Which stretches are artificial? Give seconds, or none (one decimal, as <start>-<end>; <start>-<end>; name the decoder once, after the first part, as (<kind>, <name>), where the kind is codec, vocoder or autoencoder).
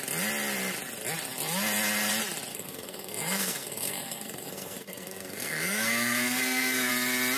2.5-6.9 (codec, SNAC)